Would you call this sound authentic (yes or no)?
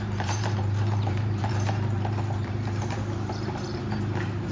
no